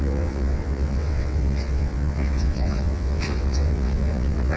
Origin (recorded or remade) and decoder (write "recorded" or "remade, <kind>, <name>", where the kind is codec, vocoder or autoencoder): remade, vocoder, WaveNeXt